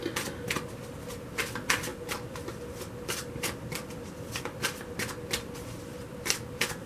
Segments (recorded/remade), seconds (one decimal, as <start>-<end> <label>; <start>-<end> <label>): 0.0-1.9 recorded; 1.9-4.2 remade; 4.2-6.9 recorded